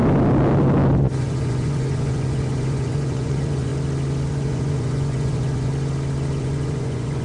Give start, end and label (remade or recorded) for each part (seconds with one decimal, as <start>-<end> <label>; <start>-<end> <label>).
0.0-1.0 recorded; 1.0-3.7 remade; 3.7-4.3 recorded; 4.3-5.7 remade; 5.7-6.4 recorded; 6.4-7.2 remade